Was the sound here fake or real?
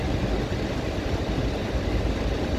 real